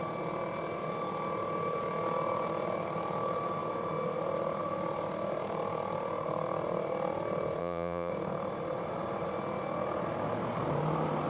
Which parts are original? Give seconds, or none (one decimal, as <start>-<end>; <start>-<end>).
0.0-7.6; 8.1-11.3